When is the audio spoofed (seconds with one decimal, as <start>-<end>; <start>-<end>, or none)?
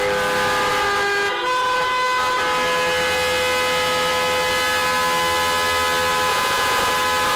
6.3-6.9